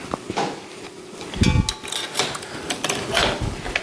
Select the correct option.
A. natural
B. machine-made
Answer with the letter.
A